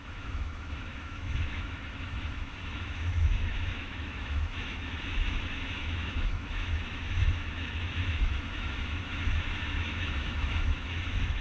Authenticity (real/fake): fake